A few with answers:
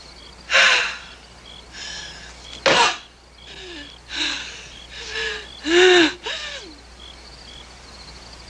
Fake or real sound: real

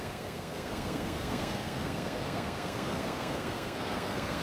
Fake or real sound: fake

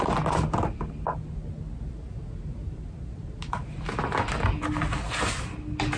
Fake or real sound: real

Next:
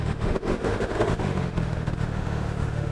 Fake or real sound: fake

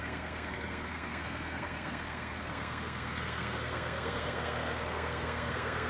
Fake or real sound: fake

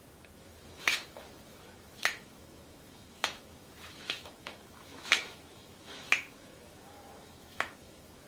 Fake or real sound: fake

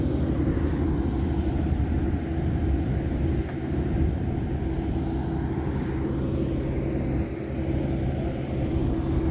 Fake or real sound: real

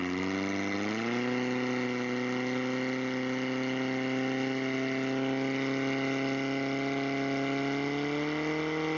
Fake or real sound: real